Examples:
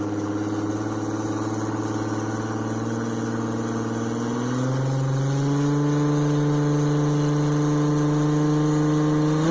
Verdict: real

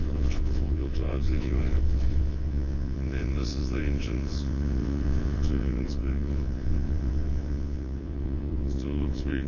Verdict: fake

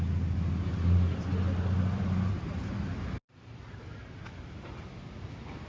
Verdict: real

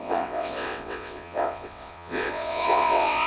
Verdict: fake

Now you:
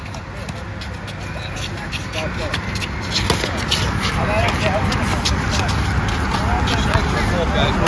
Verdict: real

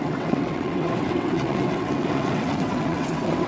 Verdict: fake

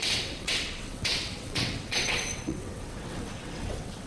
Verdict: fake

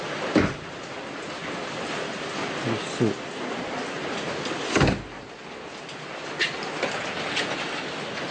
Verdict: real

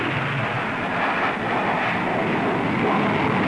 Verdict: real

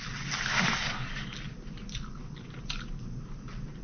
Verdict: real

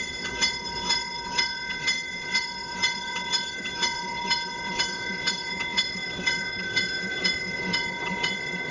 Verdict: fake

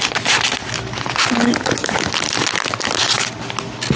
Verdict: real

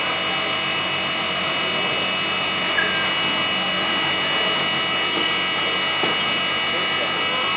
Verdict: real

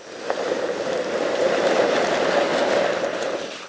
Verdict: real